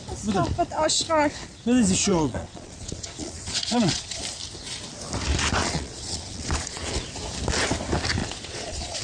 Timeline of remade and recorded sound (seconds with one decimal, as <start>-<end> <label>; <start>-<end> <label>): 0.0-2.1 recorded; 2.1-4.2 remade; 4.2-5.6 recorded; 5.6-6.9 remade; 6.9-8.2 recorded; 8.2-9.0 remade